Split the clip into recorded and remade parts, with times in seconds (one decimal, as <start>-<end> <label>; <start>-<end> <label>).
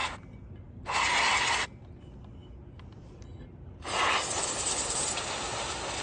0.0-6.0 recorded